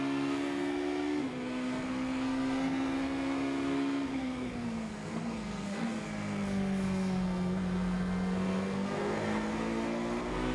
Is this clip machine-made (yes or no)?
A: yes